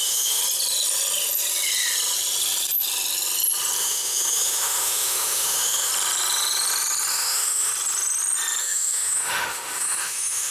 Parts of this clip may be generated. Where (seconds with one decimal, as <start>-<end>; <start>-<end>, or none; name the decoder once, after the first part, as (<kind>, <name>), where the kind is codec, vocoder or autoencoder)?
0.0-0.4 (autoencoder, DAC-VAE); 3.8-5.9; 7.1-7.7; 8.6-10.5